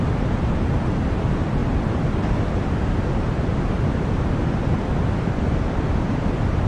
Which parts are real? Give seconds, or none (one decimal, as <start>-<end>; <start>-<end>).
0.0-6.7